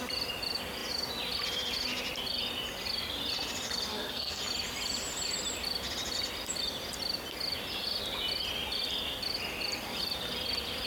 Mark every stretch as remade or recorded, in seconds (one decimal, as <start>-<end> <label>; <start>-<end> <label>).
0.0-3.9 recorded; 3.9-4.4 remade; 4.4-10.9 recorded